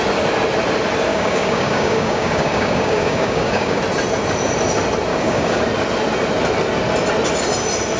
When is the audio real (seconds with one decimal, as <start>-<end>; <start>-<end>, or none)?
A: 0.0-1.1; 3.8-5.1; 5.6-8.0